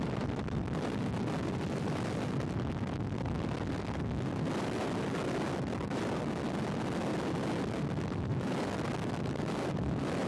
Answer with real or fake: real